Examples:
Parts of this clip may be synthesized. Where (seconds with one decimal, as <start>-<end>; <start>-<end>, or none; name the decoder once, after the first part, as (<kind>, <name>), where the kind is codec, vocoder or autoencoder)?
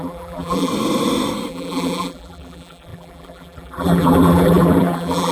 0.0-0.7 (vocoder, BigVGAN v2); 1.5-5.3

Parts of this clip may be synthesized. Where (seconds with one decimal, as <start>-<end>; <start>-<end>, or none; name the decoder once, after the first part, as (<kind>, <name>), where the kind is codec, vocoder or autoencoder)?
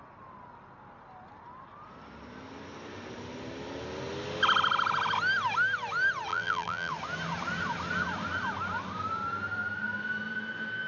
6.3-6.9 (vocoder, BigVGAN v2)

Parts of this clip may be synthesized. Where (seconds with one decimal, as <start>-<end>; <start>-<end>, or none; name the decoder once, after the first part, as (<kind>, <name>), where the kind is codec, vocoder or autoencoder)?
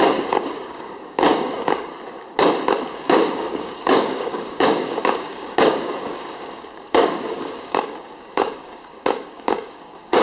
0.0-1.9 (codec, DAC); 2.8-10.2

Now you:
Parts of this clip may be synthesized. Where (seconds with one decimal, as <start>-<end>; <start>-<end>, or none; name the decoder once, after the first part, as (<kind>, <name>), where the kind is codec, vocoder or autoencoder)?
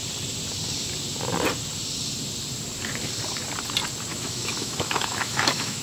4.1-5.8 (autoencoder, DAC-VAE)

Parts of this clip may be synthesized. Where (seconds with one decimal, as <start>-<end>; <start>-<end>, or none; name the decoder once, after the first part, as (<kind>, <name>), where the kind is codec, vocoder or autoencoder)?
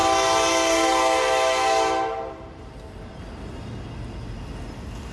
none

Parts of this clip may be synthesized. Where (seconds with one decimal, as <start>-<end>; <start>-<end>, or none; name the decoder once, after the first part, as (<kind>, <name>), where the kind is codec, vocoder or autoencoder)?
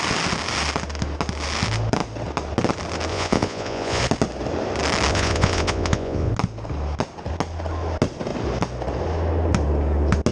3.1-4.0 (vocoder, Vocos); 5.1-6.3